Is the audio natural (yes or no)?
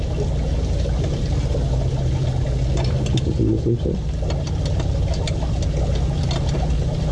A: yes